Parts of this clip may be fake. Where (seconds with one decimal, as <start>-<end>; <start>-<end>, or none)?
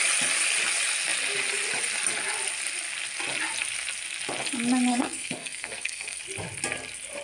4.9-6.2